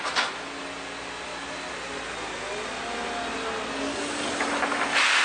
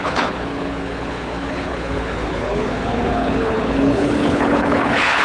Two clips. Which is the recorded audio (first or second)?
first